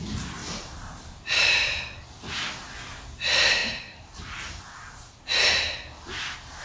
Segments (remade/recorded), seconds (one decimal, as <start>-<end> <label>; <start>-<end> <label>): 0.0-0.4 recorded; 0.4-2.0 remade; 2.0-3.6 recorded; 3.6-5.2 remade; 5.2-6.6 recorded